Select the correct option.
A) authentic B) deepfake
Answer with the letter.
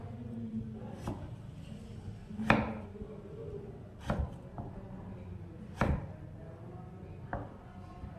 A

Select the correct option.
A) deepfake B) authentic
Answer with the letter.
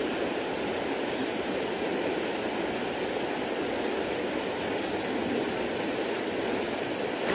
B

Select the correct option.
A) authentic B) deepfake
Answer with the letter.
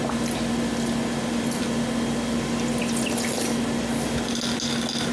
A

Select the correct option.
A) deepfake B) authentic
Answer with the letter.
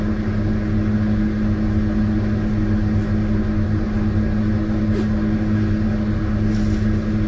B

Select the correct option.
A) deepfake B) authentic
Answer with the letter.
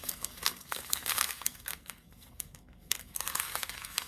A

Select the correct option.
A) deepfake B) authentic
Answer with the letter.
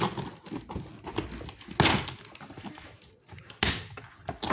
B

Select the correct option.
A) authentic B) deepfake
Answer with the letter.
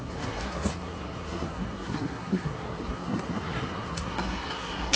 B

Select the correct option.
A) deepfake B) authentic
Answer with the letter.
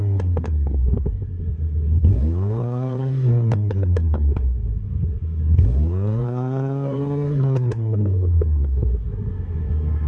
A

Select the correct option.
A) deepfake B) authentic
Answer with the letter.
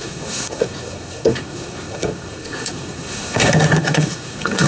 A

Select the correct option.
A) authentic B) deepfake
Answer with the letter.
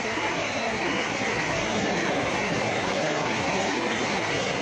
B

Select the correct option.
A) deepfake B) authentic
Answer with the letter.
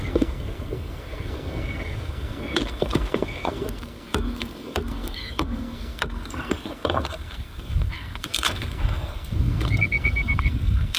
A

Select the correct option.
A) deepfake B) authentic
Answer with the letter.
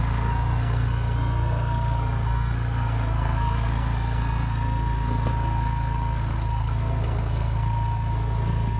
A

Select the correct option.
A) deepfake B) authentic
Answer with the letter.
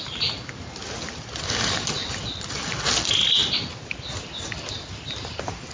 B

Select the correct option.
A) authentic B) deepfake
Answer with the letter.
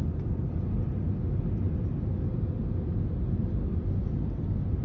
A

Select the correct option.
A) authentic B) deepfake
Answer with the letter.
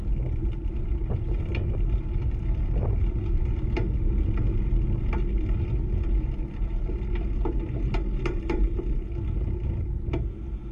A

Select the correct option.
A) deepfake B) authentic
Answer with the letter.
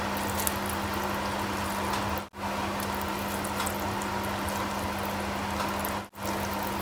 B